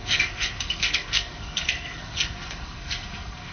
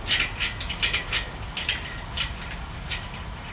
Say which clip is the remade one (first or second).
first